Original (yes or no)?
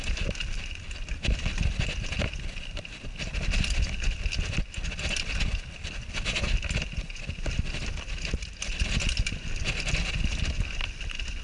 yes